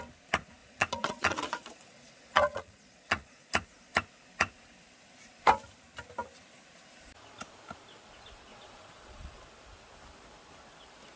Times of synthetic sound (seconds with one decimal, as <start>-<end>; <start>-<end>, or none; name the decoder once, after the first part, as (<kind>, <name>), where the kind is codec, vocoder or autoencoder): 0.6-3.5 (vocoder, Vocos); 8.5-9.4